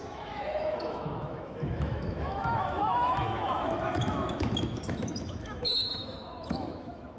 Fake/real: fake